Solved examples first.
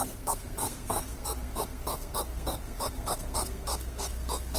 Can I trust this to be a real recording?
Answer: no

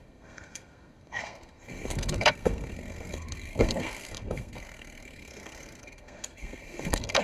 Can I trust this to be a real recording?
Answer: no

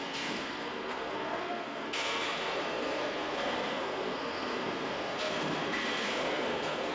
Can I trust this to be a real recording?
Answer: no